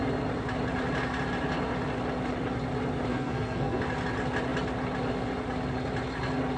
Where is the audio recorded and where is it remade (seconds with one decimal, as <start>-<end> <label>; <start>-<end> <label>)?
0.0-3.1 recorded; 3.1-3.8 remade; 3.8-6.6 recorded